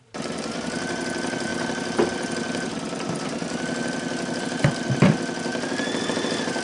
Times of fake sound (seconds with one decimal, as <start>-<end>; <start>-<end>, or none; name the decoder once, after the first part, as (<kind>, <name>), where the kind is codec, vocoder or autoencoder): 0.0-5.5 (vocoder, BigVGAN v2)